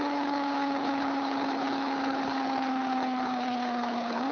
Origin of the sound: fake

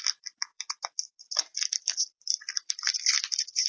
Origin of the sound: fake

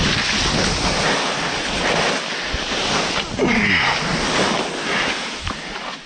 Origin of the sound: real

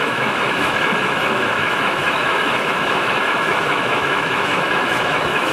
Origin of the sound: fake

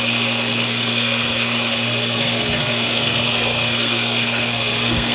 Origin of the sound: fake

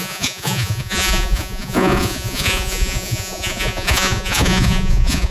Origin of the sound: fake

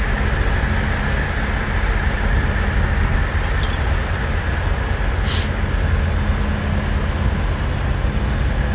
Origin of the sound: real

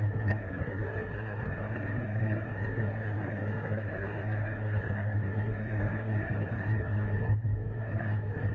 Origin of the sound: fake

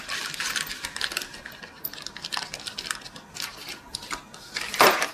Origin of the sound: real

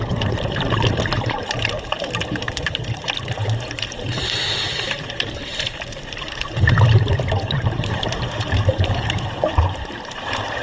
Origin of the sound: fake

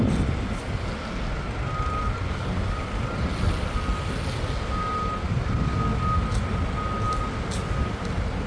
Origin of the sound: real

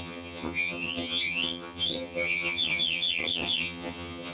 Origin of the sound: fake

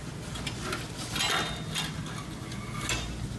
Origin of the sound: real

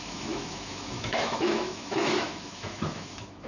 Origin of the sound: fake